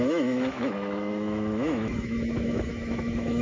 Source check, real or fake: fake